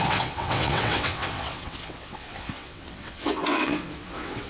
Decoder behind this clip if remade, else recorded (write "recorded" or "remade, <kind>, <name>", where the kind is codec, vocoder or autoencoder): remade, vocoder, WaveNeXt